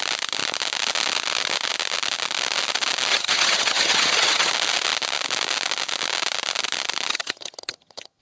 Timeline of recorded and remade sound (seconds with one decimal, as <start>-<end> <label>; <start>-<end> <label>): 0.0-3.1 recorded; 3.1-4.5 remade; 4.5-7.1 recorded; 7.1-8.2 remade